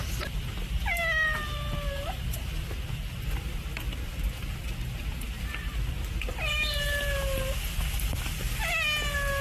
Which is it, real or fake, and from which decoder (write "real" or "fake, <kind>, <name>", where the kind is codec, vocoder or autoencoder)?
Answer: real